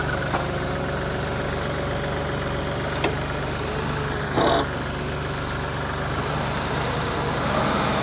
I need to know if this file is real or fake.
real